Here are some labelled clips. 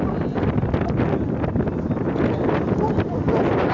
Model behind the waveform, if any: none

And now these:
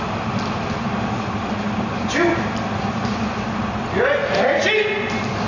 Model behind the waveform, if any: none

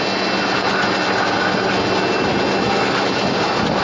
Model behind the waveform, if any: none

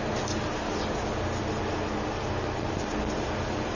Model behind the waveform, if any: none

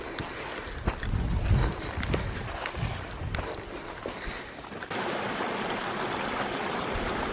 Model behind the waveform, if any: none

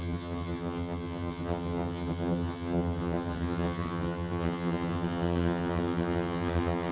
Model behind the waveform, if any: vocoder, HiFi-GAN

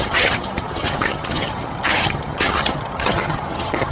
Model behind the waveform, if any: vocoder, HiFi-GAN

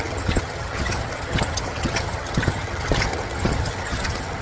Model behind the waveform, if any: vocoder, HiFi-GAN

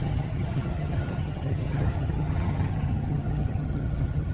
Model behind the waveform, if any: vocoder, HiFi-GAN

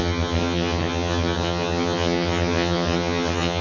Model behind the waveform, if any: vocoder, HiFi-GAN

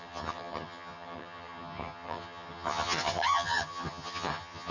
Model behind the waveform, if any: vocoder, HiFi-GAN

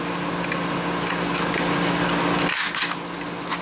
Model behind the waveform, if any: none